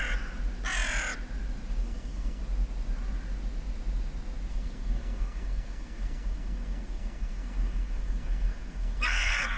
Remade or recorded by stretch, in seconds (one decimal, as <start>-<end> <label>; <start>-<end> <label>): 0.0-1.8 recorded; 1.8-2.4 remade; 2.4-4.5 recorded; 4.5-9.6 remade